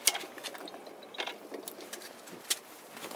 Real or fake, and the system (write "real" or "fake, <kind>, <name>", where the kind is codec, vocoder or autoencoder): real